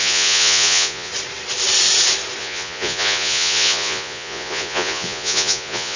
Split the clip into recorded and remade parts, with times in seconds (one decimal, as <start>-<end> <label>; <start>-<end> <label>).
0.0-1.1 remade; 1.1-2.4 recorded; 2.4-6.0 remade